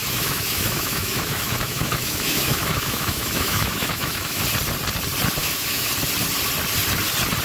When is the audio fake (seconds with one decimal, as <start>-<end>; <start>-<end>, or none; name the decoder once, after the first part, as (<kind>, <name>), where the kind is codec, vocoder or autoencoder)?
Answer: 0.0-4.4 (autoencoder, DAC-VAE); 5.4-5.9